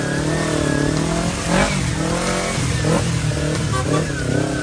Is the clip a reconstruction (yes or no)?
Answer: no